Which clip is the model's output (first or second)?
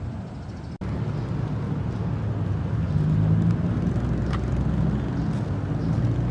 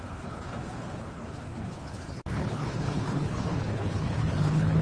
second